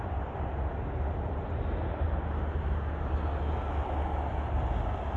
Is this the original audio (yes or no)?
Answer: yes